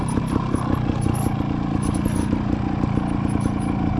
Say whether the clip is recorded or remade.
recorded